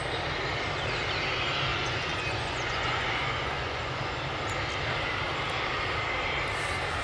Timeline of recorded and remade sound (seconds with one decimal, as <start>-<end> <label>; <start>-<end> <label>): 0.0-1.7 recorded; 1.7-4.2 remade; 4.2-7.0 recorded